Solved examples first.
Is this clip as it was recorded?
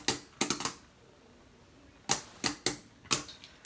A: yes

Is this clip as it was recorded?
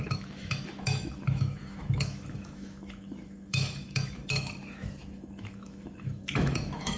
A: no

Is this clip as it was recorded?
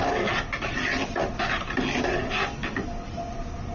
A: yes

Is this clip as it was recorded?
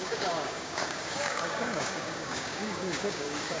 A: no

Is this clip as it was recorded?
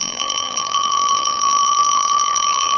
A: no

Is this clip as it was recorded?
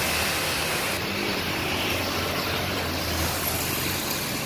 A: yes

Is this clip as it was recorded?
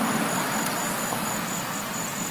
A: yes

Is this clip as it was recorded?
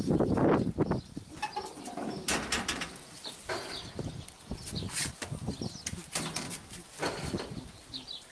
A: yes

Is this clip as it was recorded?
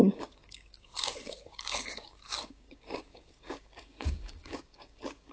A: no